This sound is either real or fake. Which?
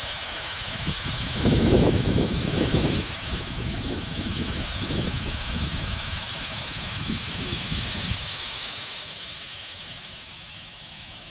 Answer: fake